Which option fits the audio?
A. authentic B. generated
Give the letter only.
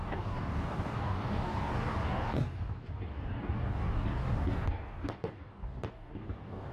B